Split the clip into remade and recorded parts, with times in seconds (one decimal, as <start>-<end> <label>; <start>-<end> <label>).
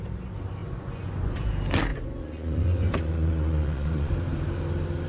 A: 0.0-0.6 recorded; 0.6-1.5 remade; 1.5-1.9 recorded; 1.9-4.1 remade; 4.1-5.1 recorded